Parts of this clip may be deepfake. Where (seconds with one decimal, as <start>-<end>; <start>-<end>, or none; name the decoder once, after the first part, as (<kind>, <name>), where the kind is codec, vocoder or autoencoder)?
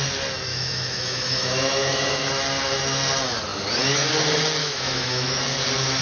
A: 0.5-2.3 (autoencoder, DAC-VAE); 4.6-5.4